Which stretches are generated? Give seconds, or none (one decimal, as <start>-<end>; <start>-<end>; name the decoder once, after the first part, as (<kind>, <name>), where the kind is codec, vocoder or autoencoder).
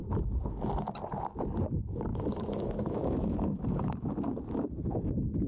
2.1-4.1 (autoencoder, DAC-VAE)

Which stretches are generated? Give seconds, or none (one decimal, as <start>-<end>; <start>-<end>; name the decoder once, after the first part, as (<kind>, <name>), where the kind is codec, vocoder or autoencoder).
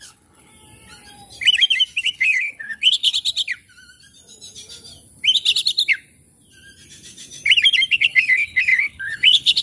0.0-0.5 (codec, HILCodec); 2.0-3.1; 7.9-9.6